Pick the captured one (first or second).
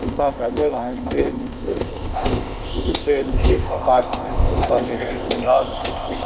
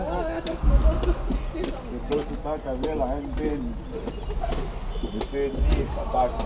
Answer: second